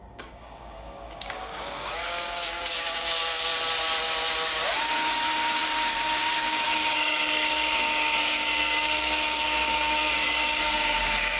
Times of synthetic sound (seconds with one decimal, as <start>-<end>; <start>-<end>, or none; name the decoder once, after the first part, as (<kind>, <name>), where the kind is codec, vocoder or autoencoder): 0.0-3.5 (codec, DAC); 5.1-11.4